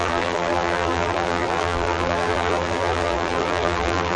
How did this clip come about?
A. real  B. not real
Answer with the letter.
B